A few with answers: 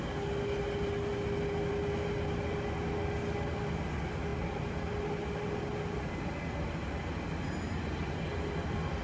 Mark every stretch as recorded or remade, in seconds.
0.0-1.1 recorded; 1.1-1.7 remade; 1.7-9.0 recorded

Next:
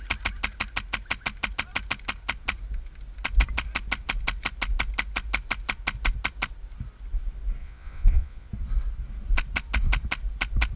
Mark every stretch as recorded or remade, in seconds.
0.0-7.6 recorded; 7.6-8.5 remade; 8.5-10.8 recorded

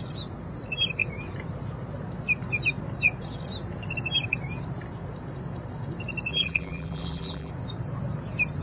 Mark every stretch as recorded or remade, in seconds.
0.0-6.3 recorded; 6.3-7.5 remade; 7.5-8.6 recorded

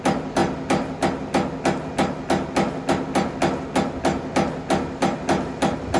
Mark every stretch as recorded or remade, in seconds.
0.0-6.0 recorded

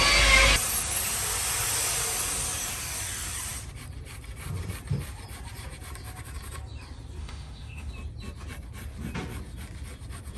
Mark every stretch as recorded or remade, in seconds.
0.0-7.2 recorded; 7.2-7.9 remade; 7.9-10.4 recorded

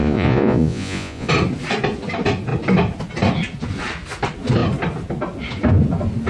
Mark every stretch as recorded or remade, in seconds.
0.0-1.3 remade; 1.3-6.3 recorded